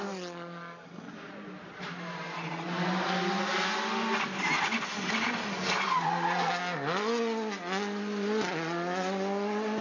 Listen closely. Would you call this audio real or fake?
real